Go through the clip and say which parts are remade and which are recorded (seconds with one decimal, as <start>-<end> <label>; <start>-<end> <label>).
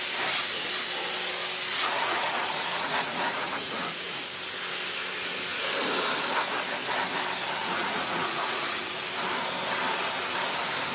0.0-1.7 recorded; 1.7-4.2 remade; 4.2-7.6 recorded; 7.6-9.0 remade; 9.0-10.9 recorded